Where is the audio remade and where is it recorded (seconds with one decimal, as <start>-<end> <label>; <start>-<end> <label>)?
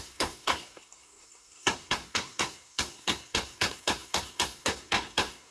0.0-5.5 remade